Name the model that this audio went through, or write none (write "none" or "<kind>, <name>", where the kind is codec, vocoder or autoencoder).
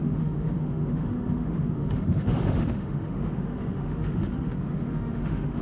autoencoder, DAC-VAE